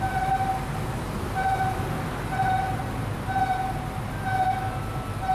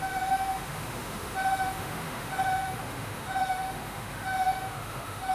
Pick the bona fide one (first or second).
first